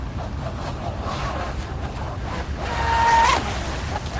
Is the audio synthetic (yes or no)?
no